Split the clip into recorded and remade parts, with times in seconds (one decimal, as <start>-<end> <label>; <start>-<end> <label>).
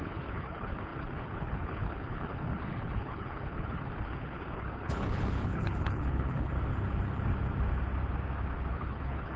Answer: 0.0-6.5 remade; 6.5-8.7 recorded; 8.7-9.4 remade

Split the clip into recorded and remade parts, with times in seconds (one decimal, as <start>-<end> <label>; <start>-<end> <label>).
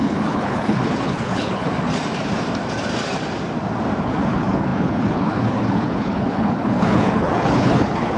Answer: 0.0-1.7 remade; 1.7-4.0 recorded; 4.0-8.2 remade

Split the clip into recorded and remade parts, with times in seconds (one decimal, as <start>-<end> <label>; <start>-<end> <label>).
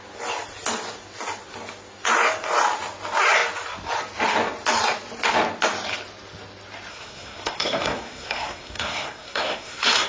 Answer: 0.0-6.9 recorded; 6.9-10.1 remade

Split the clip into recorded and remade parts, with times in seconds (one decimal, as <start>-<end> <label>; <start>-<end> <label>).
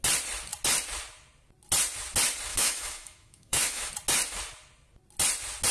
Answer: 0.0-2.5 recorded; 2.5-3.9 remade; 3.9-5.7 recorded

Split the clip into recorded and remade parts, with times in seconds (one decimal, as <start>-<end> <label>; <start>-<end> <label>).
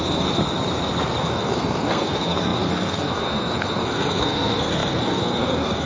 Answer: 0.0-0.4 remade; 0.4-1.2 recorded; 1.2-5.9 remade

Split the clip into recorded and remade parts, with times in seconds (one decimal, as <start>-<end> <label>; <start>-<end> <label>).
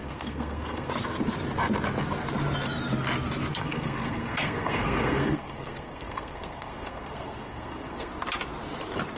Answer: 0.0-0.9 remade; 0.9-3.5 recorded; 3.5-8.1 remade; 8.1-9.2 recorded